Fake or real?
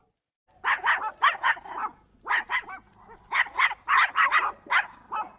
real